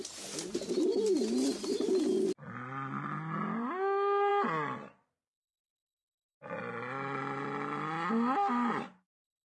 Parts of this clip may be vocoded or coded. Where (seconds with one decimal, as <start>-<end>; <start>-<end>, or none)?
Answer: none